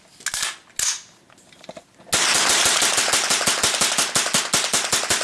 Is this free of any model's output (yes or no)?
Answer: yes